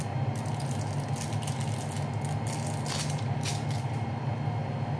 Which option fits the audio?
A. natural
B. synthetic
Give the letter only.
A